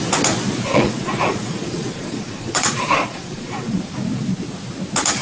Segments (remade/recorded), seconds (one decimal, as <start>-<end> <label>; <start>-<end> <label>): 0.0-0.7 recorded; 0.7-3.8 remade; 3.8-5.2 recorded